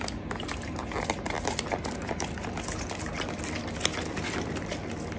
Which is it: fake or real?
real